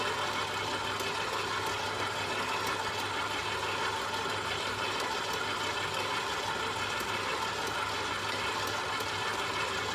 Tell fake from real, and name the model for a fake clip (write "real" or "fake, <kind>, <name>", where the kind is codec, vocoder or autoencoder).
real